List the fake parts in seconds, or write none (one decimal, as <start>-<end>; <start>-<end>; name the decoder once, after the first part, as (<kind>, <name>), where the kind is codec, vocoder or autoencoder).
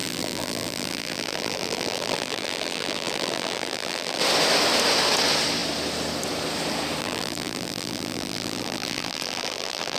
0.0-4.2 (vocoder, BigVGAN v2); 7.0-10.0